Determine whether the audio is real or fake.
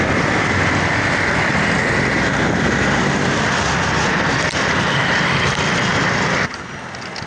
real